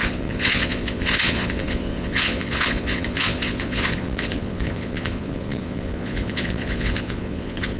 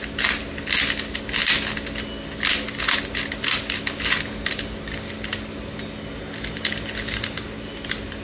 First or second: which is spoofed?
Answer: first